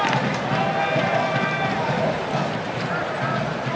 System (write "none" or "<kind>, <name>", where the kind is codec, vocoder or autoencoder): vocoder, BigVGAN v2